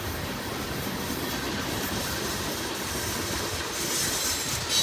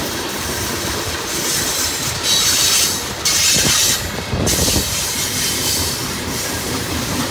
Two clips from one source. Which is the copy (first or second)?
second